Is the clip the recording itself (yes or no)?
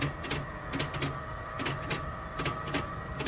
yes